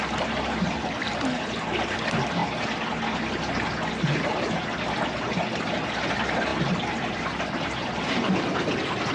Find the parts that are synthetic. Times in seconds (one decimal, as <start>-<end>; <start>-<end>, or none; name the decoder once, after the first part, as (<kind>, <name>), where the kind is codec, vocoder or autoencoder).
none